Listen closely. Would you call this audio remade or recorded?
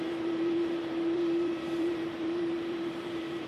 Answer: remade